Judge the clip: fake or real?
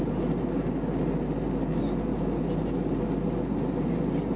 real